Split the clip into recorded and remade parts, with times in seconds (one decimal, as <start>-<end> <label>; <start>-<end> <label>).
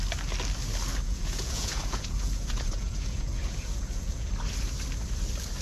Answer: 0.0-0.9 recorded; 0.9-4.3 remade; 4.3-5.6 recorded